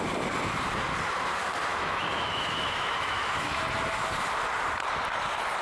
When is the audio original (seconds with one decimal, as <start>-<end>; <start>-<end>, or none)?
0.0-1.7; 3.6-5.6